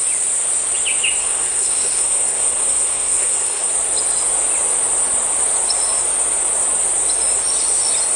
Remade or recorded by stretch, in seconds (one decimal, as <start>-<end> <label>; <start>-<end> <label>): 0.0-1.2 recorded; 1.2-3.7 remade; 3.7-8.2 recorded

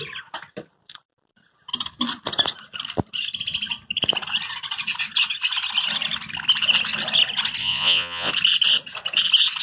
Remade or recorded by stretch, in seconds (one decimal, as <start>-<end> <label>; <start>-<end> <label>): 0.0-7.6 recorded; 7.6-8.3 remade; 8.3-9.6 recorded

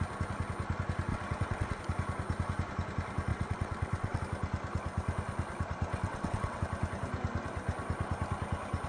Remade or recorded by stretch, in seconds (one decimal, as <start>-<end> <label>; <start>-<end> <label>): 0.0-1.1 recorded; 1.1-1.8 remade; 1.8-3.3 recorded; 3.3-4.2 remade; 4.2-5.9 recorded; 5.9-6.6 remade; 6.6-8.9 recorded

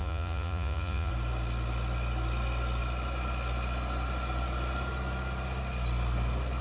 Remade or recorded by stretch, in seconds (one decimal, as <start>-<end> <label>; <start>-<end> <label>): 0.0-1.1 remade; 1.1-6.6 recorded

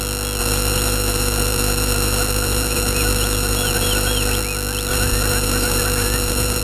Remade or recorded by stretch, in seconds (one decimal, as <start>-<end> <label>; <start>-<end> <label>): 0.0-0.4 recorded; 0.4-4.4 remade; 4.4-4.9 recorded; 4.9-6.6 remade

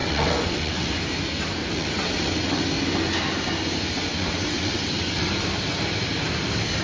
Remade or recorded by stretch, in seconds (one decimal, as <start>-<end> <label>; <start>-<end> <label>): 0.0-0.9 remade; 0.9-1.6 recorded; 1.6-2.6 remade; 2.6-4.1 recorded; 4.1-5.3 remade; 5.3-6.8 recorded